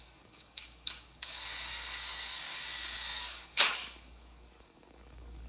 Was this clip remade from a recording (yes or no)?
yes